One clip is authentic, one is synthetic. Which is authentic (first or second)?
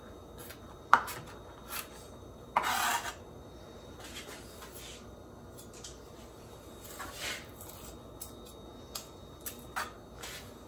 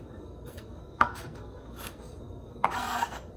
first